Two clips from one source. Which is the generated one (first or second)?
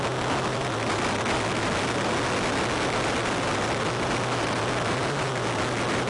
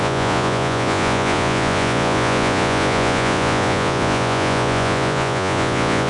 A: second